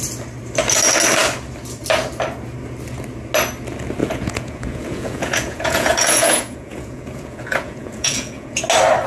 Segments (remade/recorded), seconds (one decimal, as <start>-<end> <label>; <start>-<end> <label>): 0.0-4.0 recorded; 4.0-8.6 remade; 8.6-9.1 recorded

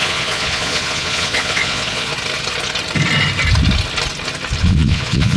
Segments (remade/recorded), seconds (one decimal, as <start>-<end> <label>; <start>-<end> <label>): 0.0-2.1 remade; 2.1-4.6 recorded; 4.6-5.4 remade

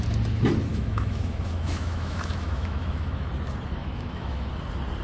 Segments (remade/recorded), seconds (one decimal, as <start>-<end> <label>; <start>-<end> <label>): 0.0-0.7 recorded; 0.7-3.3 remade; 3.3-3.8 recorded; 3.8-4.5 remade; 4.5-5.0 recorded